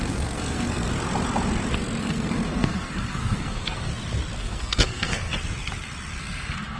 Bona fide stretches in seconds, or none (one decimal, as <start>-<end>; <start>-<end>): 0.9-2.0; 3.9-4.4; 5.3-6.2